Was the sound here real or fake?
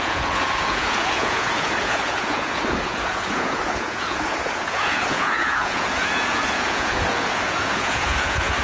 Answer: fake